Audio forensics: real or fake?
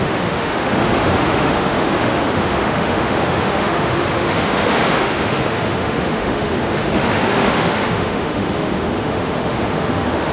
fake